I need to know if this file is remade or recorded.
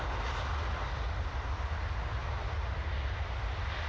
recorded